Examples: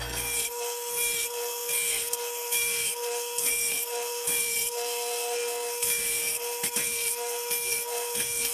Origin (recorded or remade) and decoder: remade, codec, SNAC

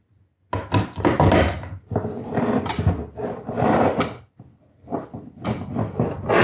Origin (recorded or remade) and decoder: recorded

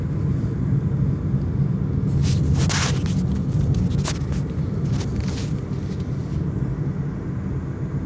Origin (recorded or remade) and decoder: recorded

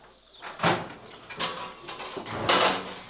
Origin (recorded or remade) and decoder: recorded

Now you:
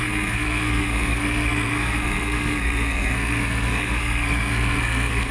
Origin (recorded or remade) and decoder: remade, codec, SNAC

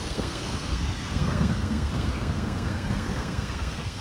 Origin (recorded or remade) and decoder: remade, codec, SNAC